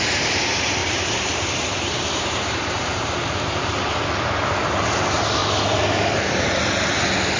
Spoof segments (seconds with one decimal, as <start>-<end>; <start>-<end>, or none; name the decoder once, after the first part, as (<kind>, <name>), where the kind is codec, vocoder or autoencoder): 0.8-3.3 (vocoder, BigVGAN v2)